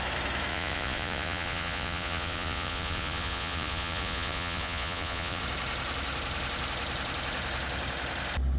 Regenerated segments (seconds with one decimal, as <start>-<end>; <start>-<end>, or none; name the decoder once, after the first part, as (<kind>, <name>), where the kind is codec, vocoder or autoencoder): 0.5-5.4 (vocoder, Vocos)